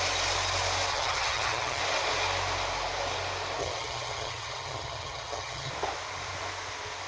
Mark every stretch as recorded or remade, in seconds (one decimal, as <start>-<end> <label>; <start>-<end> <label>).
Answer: 0.0-0.9 recorded; 0.9-1.8 remade; 1.8-3.6 recorded; 3.6-5.7 remade; 5.7-7.1 recorded